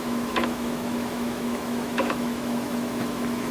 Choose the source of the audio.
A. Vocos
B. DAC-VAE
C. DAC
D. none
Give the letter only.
B